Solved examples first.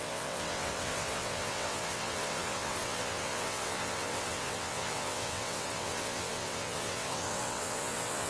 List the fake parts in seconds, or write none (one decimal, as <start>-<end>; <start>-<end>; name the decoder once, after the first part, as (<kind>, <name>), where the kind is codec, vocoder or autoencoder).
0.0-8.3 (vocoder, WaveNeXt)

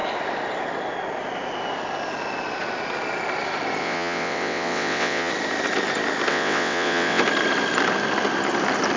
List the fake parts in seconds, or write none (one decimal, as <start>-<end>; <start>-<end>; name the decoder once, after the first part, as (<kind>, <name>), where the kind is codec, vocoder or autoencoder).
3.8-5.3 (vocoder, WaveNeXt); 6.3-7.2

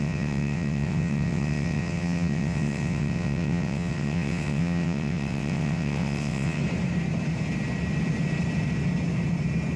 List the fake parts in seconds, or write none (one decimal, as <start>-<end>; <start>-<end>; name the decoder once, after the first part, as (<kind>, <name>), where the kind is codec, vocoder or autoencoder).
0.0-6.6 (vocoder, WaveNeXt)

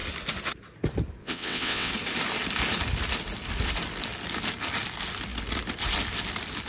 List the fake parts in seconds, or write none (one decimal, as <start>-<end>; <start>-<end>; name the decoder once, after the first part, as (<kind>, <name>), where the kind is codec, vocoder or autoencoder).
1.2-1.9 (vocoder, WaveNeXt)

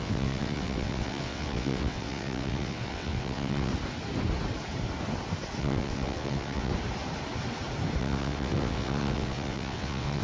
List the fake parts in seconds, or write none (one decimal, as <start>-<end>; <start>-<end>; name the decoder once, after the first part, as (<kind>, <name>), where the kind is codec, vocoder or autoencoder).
0.0-3.7 (vocoder, WaveNeXt); 5.6-6.7; 8.0-10.2

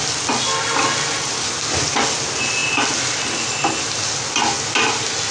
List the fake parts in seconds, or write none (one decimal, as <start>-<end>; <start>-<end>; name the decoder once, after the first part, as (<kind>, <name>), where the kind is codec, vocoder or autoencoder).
none